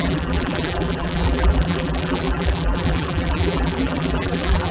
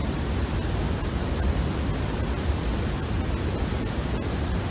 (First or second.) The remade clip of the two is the first